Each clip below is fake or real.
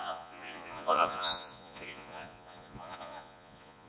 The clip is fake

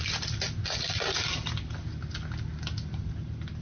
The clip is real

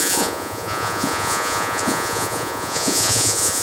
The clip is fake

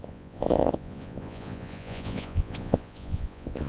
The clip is fake